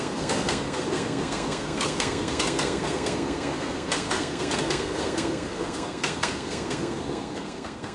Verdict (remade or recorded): remade